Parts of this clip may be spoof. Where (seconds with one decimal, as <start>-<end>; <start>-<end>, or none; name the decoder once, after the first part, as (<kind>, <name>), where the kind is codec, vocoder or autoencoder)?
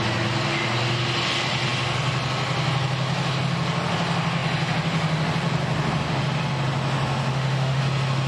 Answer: 7.3-7.8 (autoencoder, DAC-VAE)